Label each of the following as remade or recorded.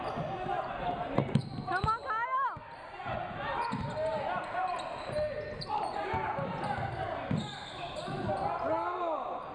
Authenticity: recorded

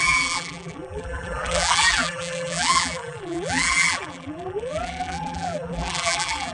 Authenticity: remade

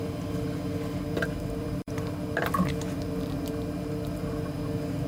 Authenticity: remade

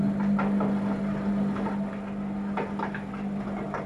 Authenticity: recorded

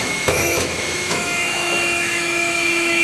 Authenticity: remade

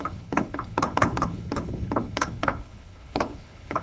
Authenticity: remade